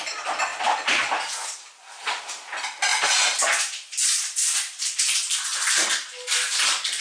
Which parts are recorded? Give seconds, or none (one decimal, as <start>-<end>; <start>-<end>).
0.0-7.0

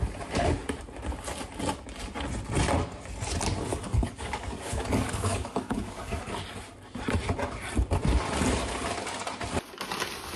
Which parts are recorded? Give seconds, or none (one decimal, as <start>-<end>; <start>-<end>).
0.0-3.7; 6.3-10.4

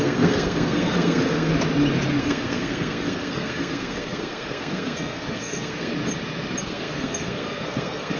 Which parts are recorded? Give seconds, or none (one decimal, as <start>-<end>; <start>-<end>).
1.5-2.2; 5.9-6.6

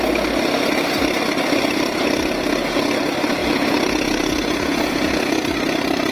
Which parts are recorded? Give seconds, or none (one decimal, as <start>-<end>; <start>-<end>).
0.0-3.4; 5.4-6.1

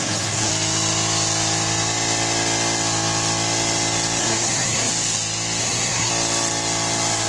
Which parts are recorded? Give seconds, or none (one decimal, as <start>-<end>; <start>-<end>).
0.5-4.2; 4.9-5.6; 6.1-7.3

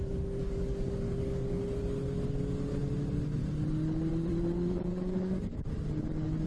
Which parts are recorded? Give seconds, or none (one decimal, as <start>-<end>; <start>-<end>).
0.0-0.4; 1.6-4.9; 5.6-6.5